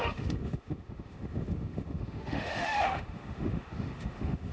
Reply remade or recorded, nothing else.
remade